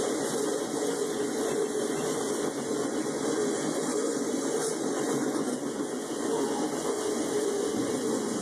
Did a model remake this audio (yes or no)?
yes